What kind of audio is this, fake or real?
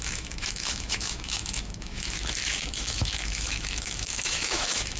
fake